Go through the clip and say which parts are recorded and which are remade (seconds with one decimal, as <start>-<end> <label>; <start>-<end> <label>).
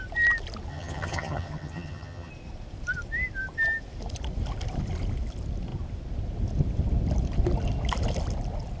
0.0-0.7 recorded; 0.7-2.3 remade; 2.3-8.8 recorded